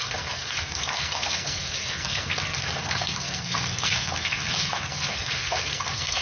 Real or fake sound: fake